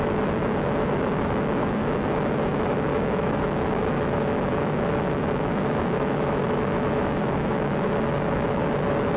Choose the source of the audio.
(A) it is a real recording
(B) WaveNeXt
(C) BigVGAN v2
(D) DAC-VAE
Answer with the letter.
D